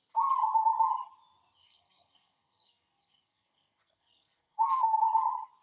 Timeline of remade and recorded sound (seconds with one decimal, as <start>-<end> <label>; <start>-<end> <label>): 0.0-1.6 recorded; 1.6-5.0 remade; 5.0-5.6 recorded